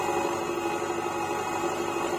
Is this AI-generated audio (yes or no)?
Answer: no